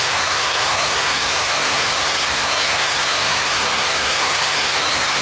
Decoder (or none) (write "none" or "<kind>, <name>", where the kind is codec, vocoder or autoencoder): codec, SNAC